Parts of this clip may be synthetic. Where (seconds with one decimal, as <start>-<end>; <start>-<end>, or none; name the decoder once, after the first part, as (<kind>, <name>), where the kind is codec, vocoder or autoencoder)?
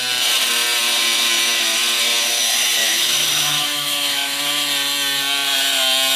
2.8-4.4 (autoencoder, DAC-VAE)